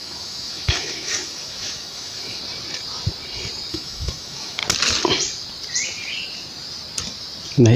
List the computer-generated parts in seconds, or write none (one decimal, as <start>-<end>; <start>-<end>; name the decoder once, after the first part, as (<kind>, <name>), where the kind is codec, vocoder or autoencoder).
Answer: 0.0-2.4 (autoencoder, DAC-VAE); 3.7-4.6